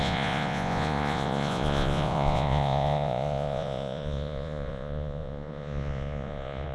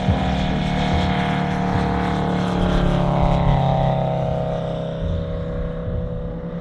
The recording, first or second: second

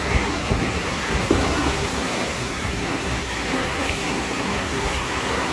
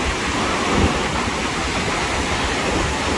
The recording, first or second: second